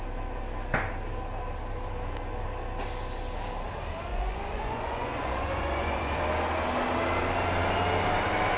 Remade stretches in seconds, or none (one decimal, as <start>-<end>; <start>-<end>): 4.1-6.2